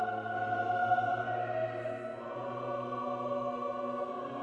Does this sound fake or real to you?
real